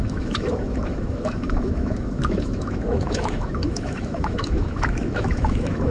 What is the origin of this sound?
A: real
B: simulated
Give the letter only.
B